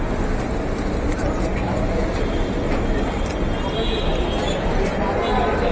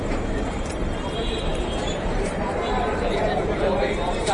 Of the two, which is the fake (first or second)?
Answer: second